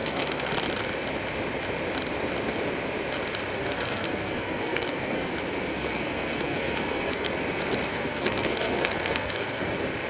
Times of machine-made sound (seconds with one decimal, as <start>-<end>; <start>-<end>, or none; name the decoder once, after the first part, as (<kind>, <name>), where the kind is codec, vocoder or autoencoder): 0.0-0.5 (codec, SNAC); 3.6-5.3; 5.7-7.3; 7.9-9.7